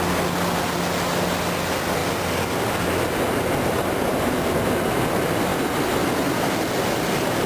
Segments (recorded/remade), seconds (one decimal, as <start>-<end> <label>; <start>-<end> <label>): 0.0-7.5 recorded